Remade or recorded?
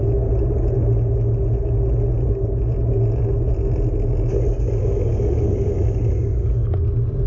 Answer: recorded